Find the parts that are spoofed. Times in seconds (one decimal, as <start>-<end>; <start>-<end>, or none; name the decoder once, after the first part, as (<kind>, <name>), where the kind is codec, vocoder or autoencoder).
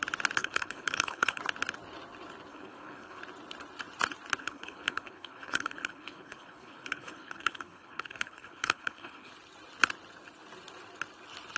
0.4-1.4 (codec, HILCodec); 2.5-3.2; 4.4-9.3